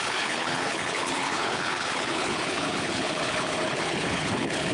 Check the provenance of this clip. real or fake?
fake